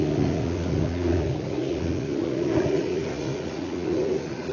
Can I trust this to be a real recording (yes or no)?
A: no